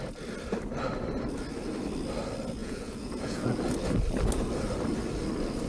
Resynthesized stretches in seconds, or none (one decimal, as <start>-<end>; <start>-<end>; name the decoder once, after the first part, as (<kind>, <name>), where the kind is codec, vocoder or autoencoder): 2.6-3.6 (vocoder, Vocos)